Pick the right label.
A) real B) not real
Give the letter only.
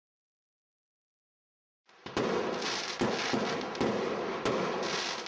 A